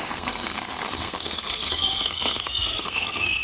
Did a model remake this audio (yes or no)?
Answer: yes